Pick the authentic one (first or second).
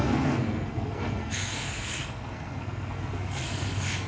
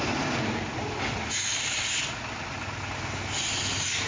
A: second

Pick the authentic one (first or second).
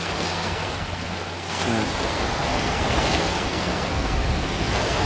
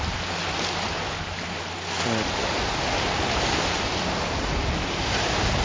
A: second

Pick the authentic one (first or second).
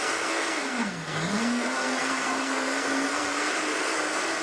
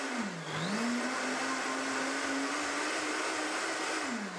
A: second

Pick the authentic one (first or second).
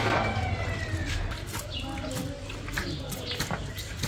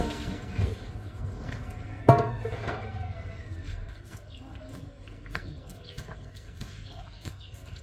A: first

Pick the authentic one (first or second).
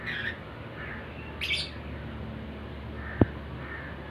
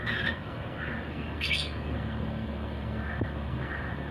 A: first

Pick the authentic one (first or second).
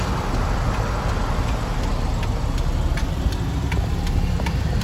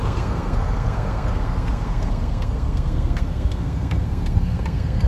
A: first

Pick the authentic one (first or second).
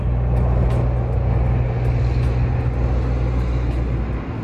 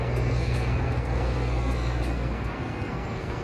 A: first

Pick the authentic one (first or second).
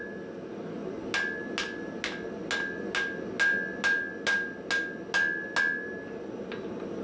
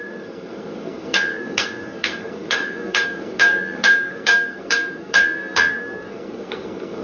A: first